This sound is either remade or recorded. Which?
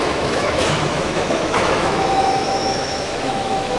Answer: remade